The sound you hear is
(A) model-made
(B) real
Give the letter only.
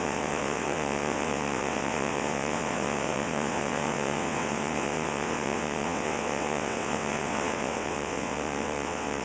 A